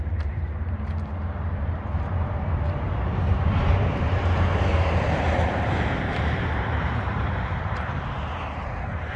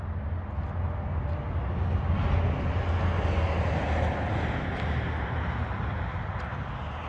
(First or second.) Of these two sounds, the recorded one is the second